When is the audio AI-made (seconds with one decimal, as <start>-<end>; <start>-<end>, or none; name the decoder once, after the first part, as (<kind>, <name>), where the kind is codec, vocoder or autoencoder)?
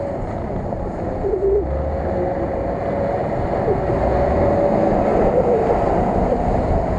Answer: none